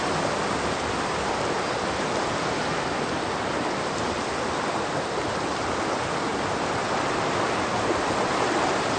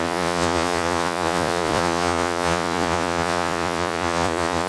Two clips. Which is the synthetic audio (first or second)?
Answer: second